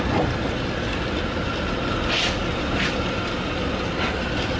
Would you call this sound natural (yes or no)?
yes